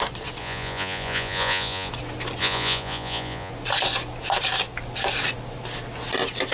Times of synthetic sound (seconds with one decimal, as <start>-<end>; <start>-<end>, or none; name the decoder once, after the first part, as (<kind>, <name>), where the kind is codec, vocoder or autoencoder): 0.4-1.9 (vocoder, Vocos); 2.4-3.5